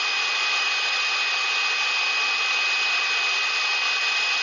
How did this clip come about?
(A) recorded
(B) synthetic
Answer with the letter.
A